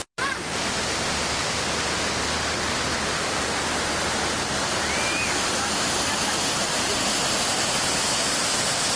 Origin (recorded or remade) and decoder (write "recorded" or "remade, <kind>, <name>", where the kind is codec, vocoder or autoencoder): recorded